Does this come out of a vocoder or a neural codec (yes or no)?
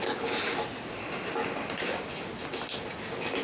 no